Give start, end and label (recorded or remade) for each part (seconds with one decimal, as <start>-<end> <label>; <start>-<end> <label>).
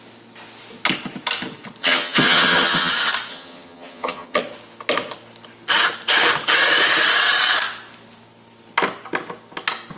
0.0-1.8 recorded; 1.8-2.9 remade; 2.9-3.3 recorded; 3.3-4.4 remade; 4.4-10.0 recorded